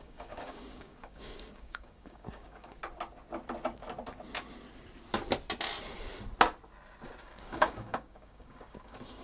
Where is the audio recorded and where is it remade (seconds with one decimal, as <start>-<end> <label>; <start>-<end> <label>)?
0.0-2.8 remade; 2.8-7.2 recorded; 7.2-9.2 remade